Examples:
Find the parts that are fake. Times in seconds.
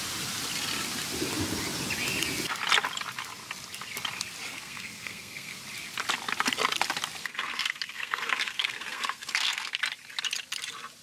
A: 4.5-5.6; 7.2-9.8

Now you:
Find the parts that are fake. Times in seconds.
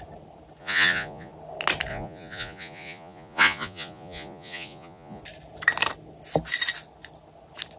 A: 0.6-1.3; 1.9-5.2